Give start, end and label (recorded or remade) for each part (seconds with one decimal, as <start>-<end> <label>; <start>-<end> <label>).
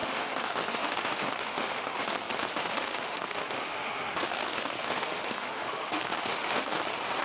0.0-2.0 remade; 2.0-2.5 recorded; 2.5-6.8 remade; 6.8-7.2 recorded